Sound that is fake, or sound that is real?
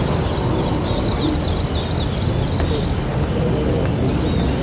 real